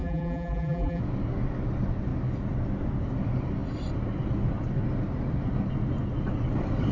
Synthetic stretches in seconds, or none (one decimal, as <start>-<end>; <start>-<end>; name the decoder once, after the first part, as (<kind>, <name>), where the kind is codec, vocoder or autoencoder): 0.0-1.0 (vocoder, BigVGAN v2)